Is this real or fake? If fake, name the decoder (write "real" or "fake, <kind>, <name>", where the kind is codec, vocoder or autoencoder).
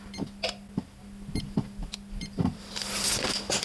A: real